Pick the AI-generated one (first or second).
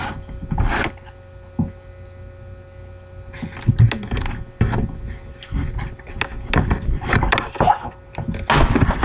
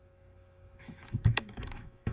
second